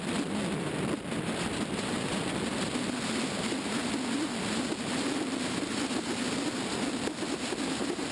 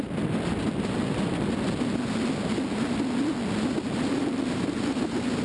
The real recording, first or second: second